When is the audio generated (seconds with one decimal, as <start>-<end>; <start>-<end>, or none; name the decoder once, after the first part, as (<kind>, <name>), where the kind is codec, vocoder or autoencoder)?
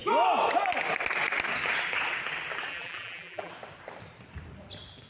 2.7-3.5 (vocoder, BigVGAN v2)